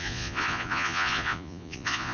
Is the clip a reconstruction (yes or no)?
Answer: yes